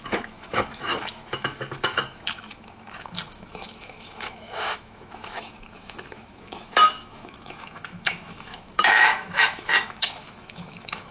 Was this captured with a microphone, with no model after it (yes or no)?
no